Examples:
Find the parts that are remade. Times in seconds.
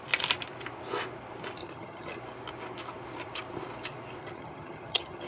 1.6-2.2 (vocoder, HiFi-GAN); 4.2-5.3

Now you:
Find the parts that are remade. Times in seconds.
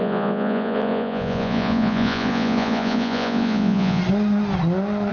0.0-4.0 (vocoder, Vocos)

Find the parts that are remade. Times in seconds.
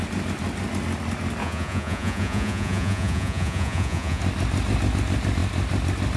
1.4-4.2 (vocoder, Vocos)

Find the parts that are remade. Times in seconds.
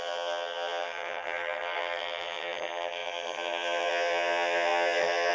0.0-5.3 (vocoder, HiFi-GAN)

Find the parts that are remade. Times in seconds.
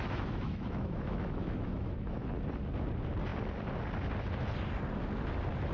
0.0-2.3 (autoencoder, DAC-VAE)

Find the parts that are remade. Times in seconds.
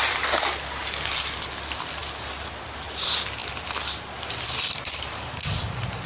none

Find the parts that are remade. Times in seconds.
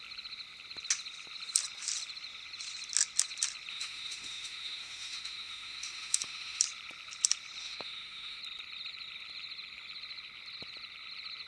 3.7-6.6 (autoencoder, DAC-VAE); 7.6-8.4